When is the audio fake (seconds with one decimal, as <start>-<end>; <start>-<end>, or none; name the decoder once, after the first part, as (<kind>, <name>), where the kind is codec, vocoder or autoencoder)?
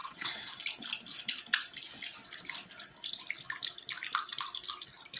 0.0-0.5 (vocoder, WaveNeXt)